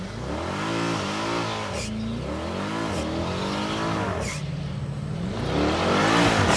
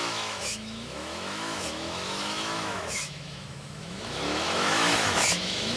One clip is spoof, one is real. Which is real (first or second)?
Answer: first